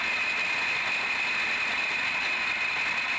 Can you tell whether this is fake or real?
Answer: real